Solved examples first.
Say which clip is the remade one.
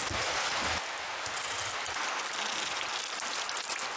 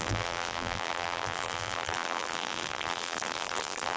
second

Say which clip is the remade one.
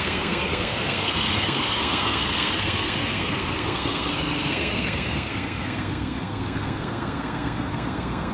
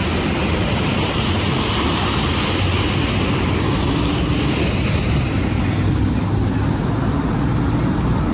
first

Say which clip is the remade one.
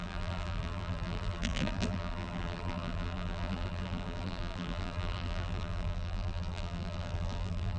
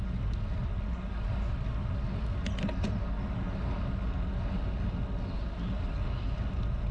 first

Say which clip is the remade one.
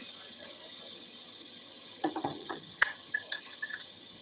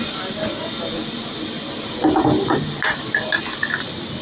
first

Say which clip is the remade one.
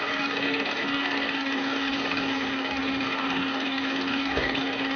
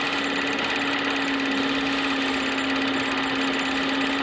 first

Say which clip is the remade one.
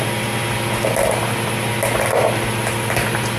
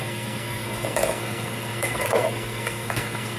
second